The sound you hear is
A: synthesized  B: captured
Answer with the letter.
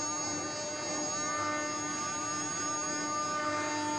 B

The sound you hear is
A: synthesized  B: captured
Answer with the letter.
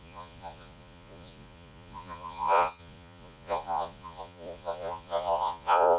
A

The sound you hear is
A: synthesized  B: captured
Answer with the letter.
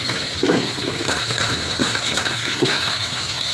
A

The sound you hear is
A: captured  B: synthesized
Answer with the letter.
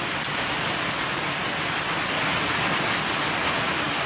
A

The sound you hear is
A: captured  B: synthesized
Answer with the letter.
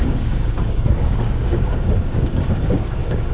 B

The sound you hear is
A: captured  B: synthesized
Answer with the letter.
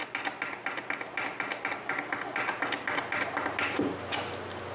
A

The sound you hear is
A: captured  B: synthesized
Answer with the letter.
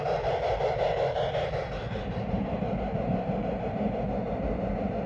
A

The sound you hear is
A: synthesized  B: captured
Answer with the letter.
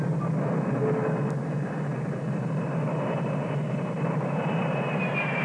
B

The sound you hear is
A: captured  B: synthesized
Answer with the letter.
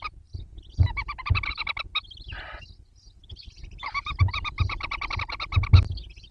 A